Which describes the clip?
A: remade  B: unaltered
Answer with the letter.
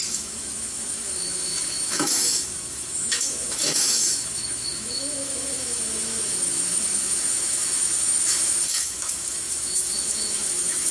A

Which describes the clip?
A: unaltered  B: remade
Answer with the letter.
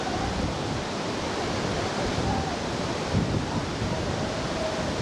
A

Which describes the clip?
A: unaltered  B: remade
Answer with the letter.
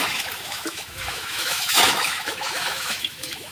B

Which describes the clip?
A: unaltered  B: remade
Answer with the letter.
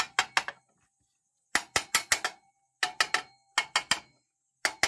A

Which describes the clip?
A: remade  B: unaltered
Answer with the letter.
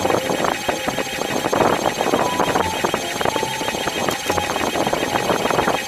B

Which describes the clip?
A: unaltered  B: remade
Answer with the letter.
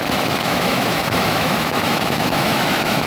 B